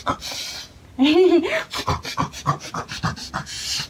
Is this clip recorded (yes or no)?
yes